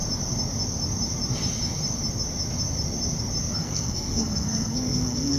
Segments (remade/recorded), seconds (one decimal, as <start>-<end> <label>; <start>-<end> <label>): 0.0-3.6 recorded; 3.6-5.4 remade